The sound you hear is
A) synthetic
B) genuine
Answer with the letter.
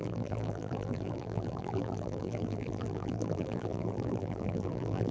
A